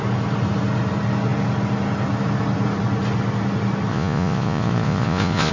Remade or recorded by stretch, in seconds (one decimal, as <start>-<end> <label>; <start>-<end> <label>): 0.0-3.9 recorded; 3.9-5.5 remade